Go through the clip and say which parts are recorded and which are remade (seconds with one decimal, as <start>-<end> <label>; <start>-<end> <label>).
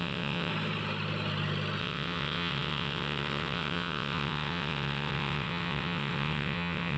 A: 0.0-0.5 remade; 0.5-1.8 recorded; 1.8-7.0 remade